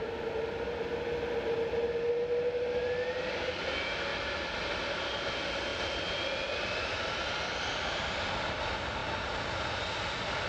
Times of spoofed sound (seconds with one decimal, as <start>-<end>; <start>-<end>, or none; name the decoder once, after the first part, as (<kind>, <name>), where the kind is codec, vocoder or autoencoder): none